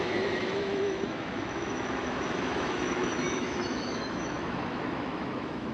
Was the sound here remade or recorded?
remade